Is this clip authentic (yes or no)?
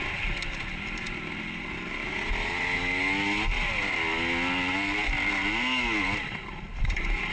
yes